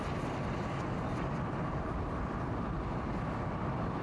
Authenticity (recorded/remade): recorded